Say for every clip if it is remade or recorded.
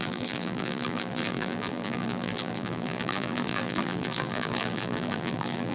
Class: remade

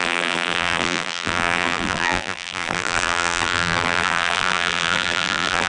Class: remade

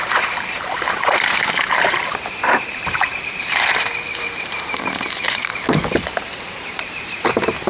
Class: remade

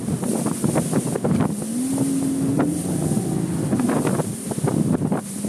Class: recorded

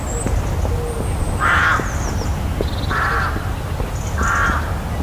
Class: recorded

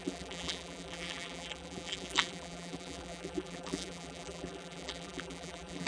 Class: remade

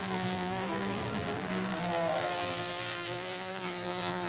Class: remade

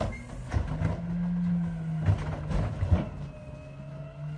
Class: recorded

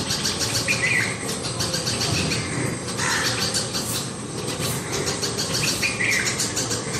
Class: recorded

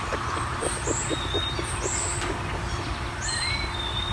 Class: recorded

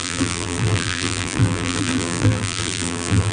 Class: remade